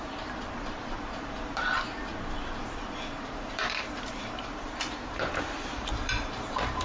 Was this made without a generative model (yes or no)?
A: no